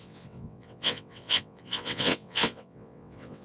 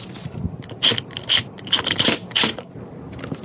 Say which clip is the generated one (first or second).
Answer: first